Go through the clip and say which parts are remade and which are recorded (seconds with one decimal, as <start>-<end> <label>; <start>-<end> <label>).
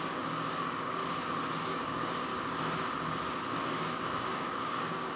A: 0.0-1.0 remade; 1.0-1.5 recorded; 1.5-2.3 remade; 2.3-3.4 recorded; 3.4-5.2 remade